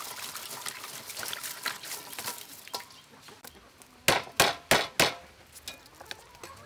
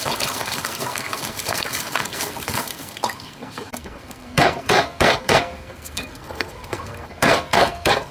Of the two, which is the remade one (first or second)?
second